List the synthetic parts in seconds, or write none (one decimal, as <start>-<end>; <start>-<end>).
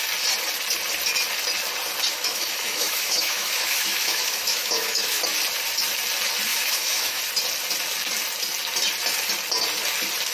2.1-5.2; 6.5-7.2